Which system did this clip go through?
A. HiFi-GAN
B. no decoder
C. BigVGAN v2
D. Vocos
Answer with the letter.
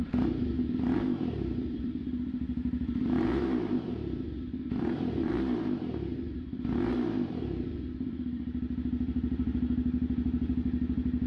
C